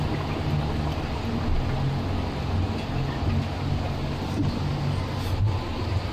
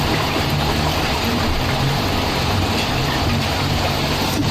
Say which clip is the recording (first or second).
first